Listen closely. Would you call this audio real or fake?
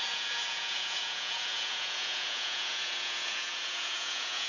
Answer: fake